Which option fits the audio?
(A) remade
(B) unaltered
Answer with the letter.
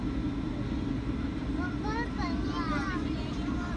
B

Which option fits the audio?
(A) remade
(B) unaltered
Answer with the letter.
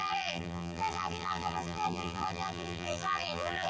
A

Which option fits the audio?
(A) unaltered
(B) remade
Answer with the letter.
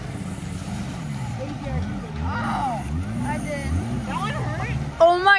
A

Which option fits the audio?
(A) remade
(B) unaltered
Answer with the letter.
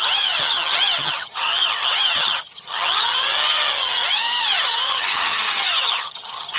A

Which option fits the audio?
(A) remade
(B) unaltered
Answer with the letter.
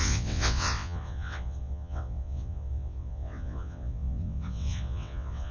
A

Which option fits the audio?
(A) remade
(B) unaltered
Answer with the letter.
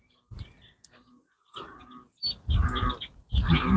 B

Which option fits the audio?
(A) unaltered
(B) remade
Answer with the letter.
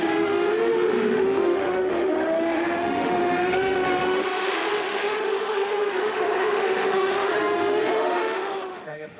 B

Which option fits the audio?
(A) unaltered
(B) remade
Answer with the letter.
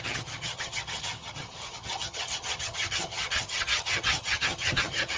B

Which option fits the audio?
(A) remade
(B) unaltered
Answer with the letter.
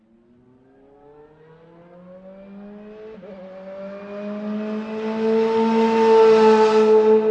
B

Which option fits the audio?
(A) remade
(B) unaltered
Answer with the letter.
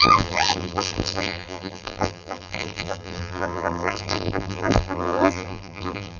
A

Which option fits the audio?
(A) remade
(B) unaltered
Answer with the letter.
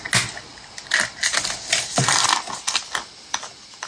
B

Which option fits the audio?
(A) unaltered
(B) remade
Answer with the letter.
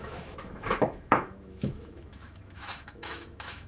B